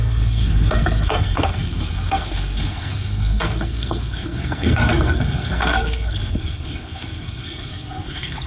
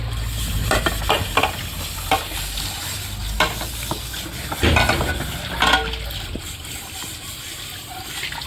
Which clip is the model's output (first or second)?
first